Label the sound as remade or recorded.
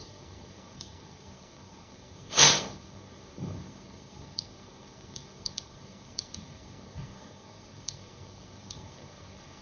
remade